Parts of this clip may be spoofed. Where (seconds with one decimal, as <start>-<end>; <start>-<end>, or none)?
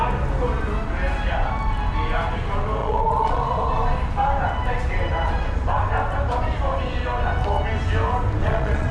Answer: 2.8-3.4; 8.4-8.9